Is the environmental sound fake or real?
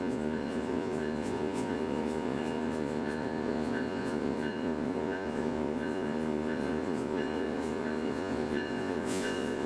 fake